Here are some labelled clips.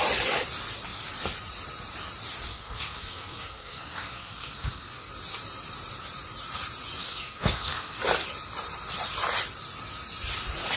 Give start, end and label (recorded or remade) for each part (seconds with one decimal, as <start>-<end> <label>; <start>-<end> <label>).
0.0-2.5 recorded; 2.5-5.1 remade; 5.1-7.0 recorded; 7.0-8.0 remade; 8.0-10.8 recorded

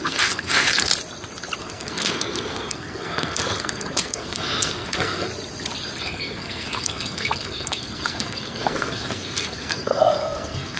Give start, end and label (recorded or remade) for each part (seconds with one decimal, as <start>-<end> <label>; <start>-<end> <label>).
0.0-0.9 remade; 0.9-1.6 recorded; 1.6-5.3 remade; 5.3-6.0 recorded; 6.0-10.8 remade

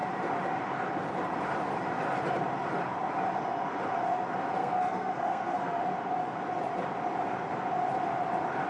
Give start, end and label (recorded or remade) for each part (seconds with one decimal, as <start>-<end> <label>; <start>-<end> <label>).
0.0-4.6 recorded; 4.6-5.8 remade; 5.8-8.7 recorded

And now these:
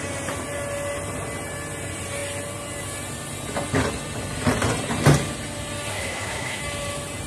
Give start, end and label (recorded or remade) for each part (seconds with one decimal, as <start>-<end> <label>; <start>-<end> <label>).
0.0-5.9 recorded; 5.9-6.6 remade; 6.6-7.3 recorded

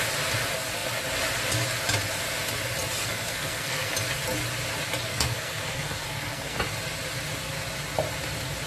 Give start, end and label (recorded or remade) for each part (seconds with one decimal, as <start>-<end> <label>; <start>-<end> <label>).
0.0-3.0 recorded; 3.0-3.9 remade; 3.9-5.1 recorded; 5.1-6.6 remade; 6.6-8.7 recorded

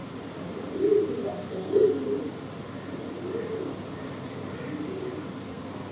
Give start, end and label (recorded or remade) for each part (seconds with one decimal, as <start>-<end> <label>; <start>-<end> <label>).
0.0-1.5 recorded; 1.5-2.0 remade; 2.0-5.5 recorded; 5.5-5.9 remade

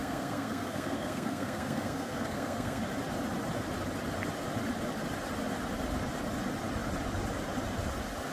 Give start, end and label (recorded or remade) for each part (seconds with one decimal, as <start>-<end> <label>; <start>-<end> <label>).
0.0-2.8 remade; 2.8-8.3 recorded

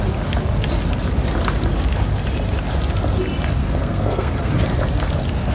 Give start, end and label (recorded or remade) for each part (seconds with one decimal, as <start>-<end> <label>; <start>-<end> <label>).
0.0-3.6 recorded; 3.6-4.5 remade; 4.5-5.5 recorded